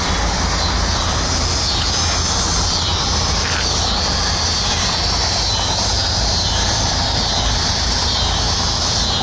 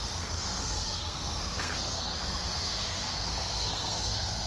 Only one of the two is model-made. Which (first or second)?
second